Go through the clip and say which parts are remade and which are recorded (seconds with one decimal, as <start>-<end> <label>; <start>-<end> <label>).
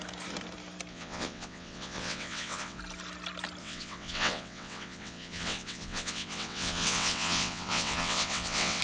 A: 0.0-0.9 recorded; 0.9-2.8 remade; 2.8-3.6 recorded; 3.6-8.8 remade